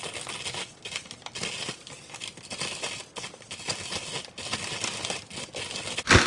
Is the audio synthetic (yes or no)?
no